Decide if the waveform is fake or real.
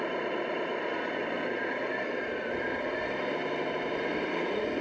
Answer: fake